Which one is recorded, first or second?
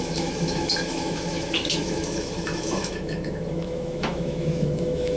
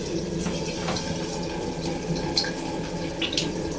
second